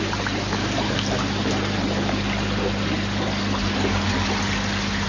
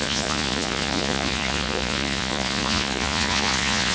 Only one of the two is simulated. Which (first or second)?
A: second